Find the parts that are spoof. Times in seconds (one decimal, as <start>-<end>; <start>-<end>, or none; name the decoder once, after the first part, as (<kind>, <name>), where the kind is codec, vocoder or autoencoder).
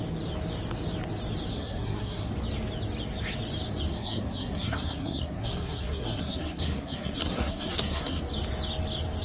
1.5-2.3 (codec, SNAC); 3.9-8.2